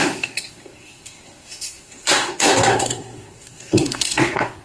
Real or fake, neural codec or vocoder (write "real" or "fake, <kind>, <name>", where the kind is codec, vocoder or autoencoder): fake, codec, SNAC